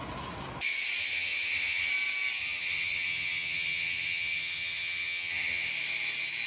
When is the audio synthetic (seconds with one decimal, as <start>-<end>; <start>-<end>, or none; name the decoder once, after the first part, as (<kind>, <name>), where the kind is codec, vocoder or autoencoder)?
1.0-1.9 (vocoder, HiFi-GAN); 2.4-5.7